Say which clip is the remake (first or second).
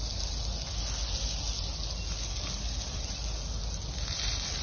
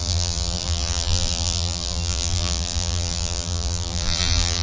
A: second